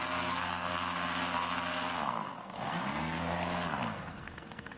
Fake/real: fake